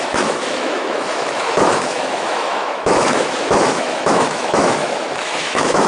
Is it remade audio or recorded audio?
remade